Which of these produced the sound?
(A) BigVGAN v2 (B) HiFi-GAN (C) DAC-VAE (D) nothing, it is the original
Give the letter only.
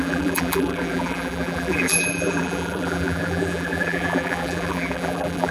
A